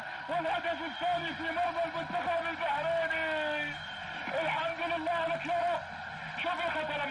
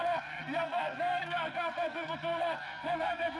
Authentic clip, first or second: first